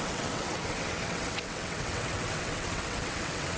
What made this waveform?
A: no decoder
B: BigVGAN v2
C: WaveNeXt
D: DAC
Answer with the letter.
C